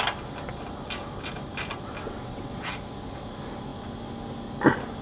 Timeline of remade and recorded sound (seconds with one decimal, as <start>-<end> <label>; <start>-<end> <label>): 0.0-2.0 recorded; 2.0-2.7 remade; 2.7-5.0 recorded